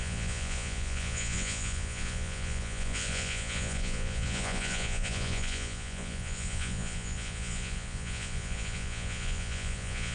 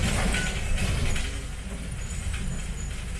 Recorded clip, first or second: second